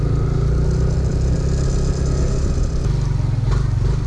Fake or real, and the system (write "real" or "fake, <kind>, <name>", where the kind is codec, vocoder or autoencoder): real